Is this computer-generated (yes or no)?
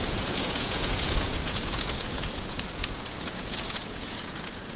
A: yes